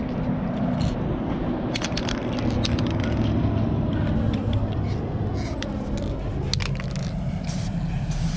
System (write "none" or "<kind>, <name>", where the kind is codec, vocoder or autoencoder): none